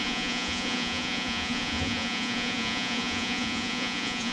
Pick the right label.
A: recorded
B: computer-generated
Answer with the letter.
B